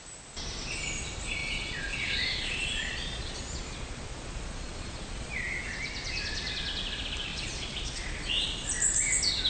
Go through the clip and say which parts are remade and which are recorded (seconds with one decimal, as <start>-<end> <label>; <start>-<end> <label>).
0.0-1.4 recorded; 1.4-5.7 remade; 5.7-7.3 recorded; 7.3-8.7 remade; 8.7-9.5 recorded